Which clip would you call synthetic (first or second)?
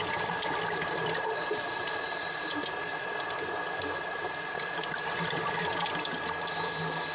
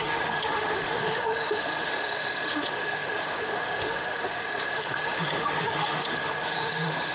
second